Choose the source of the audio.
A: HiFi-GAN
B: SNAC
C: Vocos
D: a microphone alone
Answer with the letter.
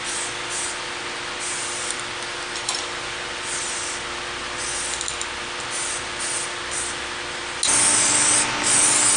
D